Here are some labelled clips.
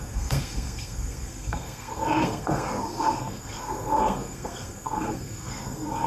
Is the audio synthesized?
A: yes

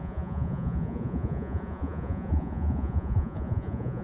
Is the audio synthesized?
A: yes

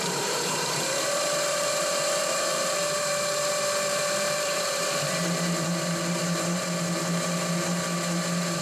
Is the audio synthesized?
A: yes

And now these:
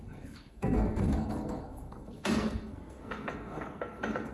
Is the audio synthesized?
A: yes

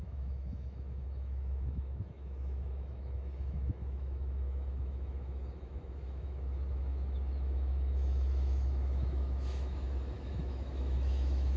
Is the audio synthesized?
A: yes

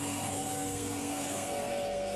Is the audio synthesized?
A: yes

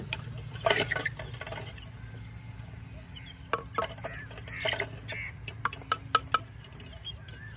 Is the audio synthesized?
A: no